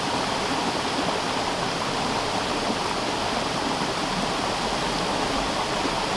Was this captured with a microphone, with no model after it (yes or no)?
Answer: yes